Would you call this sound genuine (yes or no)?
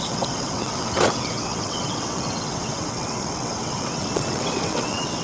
no